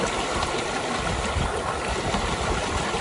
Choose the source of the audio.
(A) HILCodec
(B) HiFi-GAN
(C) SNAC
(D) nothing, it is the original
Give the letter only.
D